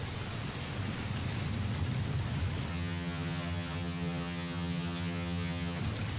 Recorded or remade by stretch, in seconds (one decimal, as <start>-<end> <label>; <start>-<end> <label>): 0.0-2.7 recorded; 2.7-5.8 remade; 5.8-6.2 recorded